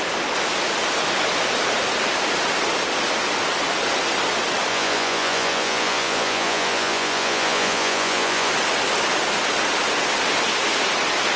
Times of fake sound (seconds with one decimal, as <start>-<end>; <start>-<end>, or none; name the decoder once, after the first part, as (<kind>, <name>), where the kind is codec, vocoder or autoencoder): 4.7-8.5 (vocoder, Vocos)